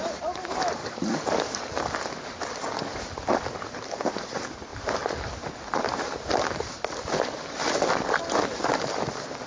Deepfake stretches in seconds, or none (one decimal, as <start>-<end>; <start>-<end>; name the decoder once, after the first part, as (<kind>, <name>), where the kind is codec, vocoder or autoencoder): 0.8-1.7 (codec, DAC)